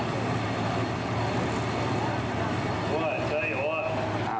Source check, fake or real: real